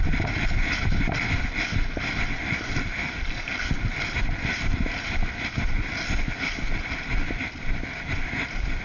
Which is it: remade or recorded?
recorded